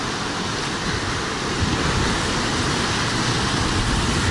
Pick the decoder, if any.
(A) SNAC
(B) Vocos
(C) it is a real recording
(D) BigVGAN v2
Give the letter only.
C